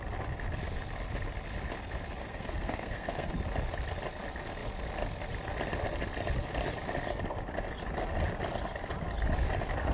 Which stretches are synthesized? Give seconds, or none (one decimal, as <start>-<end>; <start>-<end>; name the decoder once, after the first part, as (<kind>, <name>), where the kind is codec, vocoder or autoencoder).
2.2-3.3 (codec, SNAC)